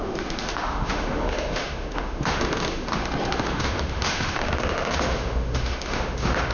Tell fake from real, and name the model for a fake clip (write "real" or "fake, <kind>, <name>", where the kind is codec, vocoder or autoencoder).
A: fake, autoencoder, DAC-VAE